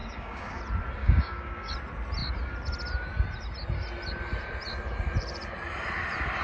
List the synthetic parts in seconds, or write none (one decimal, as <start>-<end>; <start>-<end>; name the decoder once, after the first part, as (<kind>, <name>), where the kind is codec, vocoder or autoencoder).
0.0-0.6 (codec, DAC); 1.0-1.7

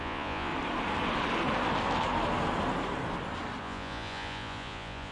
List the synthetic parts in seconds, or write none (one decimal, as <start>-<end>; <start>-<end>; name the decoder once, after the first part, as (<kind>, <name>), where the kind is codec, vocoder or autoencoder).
0.0-0.5 (vocoder, Vocos); 3.6-5.1

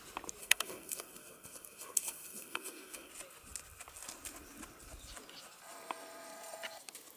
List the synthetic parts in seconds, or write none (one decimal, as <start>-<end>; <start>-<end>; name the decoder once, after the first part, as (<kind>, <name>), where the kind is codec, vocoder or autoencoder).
0.4-3.1 (codec, SNAC)

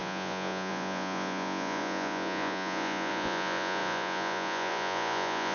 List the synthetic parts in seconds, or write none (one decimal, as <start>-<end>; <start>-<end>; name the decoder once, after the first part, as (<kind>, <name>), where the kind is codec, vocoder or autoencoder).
0.0-5.5 (vocoder, Vocos)

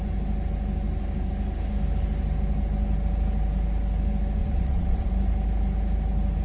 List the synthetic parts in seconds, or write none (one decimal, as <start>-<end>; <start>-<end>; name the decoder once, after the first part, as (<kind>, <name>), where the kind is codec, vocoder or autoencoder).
4.4-5.1 (vocoder, WaveNeXt)